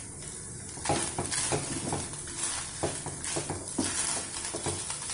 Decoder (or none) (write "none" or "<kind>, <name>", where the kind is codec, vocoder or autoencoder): none